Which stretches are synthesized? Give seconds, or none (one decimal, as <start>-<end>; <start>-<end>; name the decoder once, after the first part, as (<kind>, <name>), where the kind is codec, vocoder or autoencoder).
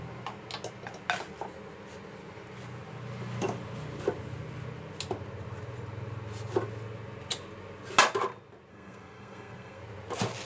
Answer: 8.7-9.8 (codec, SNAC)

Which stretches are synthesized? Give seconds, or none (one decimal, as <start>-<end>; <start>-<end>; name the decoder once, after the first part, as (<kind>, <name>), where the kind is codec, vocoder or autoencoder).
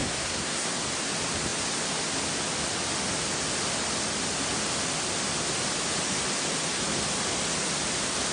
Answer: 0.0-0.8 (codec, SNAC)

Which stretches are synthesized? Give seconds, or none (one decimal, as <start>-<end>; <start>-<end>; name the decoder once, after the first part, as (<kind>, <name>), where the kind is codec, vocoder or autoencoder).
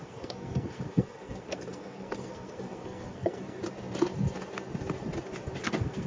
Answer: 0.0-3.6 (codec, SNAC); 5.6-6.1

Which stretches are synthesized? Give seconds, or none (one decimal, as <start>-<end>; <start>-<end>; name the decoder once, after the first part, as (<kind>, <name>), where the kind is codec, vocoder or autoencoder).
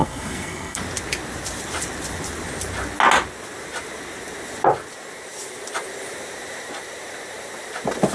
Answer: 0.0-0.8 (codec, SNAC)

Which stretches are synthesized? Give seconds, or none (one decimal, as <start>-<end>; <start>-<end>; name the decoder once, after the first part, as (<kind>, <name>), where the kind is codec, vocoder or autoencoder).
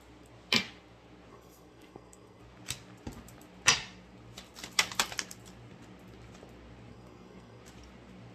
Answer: 1.3-2.4 (codec, SNAC); 6.9-7.6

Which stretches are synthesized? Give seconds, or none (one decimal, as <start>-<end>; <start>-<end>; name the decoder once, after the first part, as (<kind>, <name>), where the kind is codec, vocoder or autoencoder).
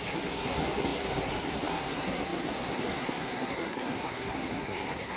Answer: 0.0-5.2 (codec, SNAC)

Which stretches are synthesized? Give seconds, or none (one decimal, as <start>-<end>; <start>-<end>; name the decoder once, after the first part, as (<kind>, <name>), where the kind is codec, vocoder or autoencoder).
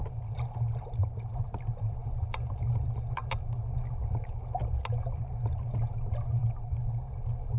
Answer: none